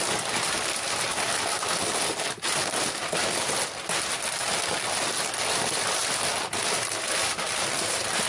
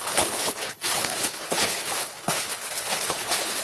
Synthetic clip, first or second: second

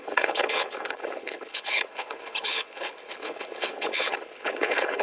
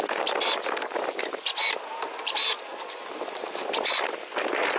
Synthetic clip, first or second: first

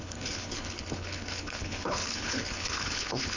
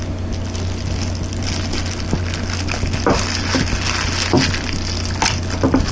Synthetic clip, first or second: first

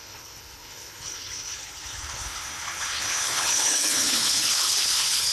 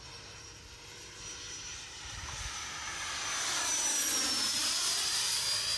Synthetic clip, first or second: first